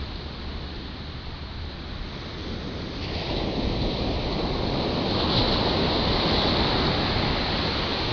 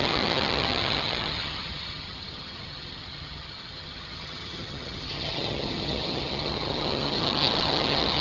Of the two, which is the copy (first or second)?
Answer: second